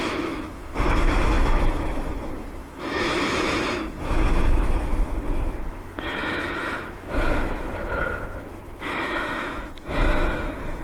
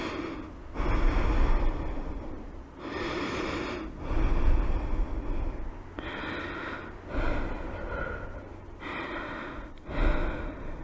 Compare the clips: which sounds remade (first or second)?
first